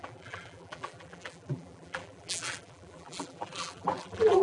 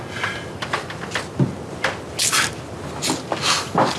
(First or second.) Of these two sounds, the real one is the second